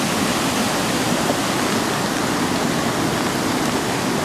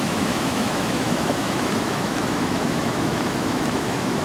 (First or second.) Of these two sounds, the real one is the first